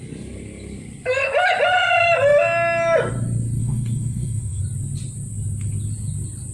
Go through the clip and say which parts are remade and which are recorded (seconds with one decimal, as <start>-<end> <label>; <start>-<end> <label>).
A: 0.0-3.6 recorded; 3.6-4.6 remade; 4.6-6.5 recorded